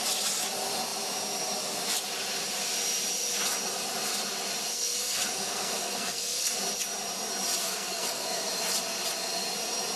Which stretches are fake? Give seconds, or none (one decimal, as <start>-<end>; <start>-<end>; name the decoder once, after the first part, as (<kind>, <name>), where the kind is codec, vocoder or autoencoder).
4.7-6.6 (codec, SNAC); 7.6-8.5

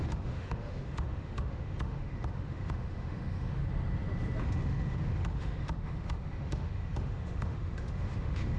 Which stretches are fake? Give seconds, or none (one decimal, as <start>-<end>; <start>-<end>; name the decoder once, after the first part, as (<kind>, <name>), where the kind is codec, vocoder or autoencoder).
0.0-3.6 (autoencoder, DAC-VAE); 4.4-8.6

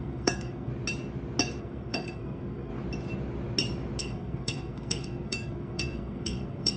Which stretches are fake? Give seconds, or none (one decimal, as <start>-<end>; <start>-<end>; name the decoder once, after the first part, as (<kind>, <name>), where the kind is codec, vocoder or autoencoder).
0.0-0.7 (codec, SNAC); 1.6-2.7; 4.0-6.8

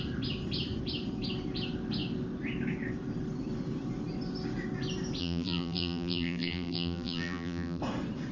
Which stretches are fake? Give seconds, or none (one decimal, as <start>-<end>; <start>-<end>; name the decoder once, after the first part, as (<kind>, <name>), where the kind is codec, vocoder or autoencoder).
5.2-7.8 (vocoder, BigVGAN v2)